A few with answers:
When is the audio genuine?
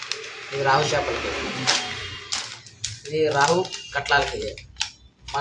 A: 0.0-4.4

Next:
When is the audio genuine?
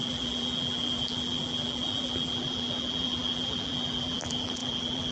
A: none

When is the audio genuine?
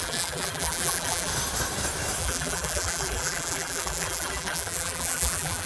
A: 1.3-2.2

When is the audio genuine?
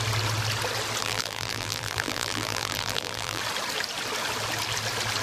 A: 0.0-1.0; 3.4-5.2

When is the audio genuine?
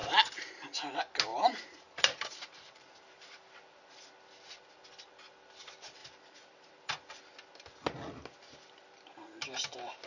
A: 0.5-1.3; 3.5-6.0; 7.2-10.1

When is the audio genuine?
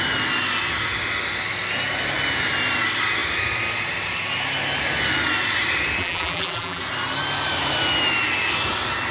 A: 0.0-6.0; 6.8-9.1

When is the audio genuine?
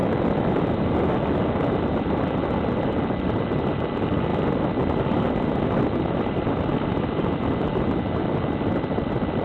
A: 4.3-5.9